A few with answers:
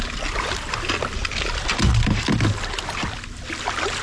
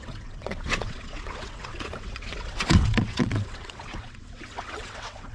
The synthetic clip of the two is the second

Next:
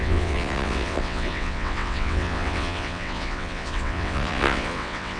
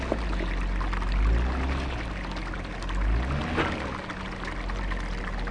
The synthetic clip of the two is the first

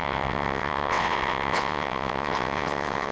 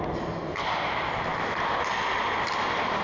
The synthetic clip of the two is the first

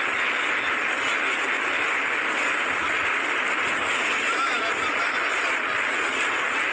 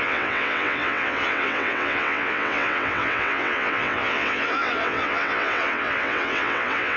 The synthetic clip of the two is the second